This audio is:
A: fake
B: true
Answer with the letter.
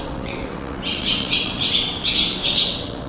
A